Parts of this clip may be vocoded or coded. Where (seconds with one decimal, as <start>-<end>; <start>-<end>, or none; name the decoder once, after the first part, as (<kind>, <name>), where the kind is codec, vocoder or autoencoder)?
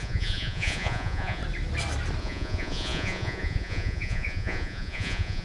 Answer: 0.0-1.4 (vocoder, Vocos); 2.2-5.4